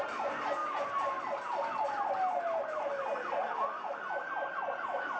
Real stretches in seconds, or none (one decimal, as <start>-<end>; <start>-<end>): 0.0-5.2